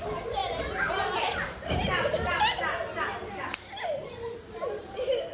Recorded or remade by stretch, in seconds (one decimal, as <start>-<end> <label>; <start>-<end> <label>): 0.0-0.4 remade; 0.4-1.2 recorded; 1.2-5.3 remade